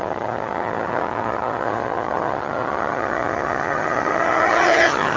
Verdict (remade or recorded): remade